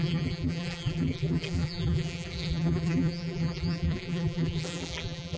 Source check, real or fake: fake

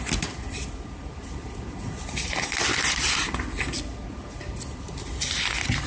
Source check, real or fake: real